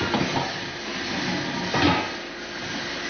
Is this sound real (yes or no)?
yes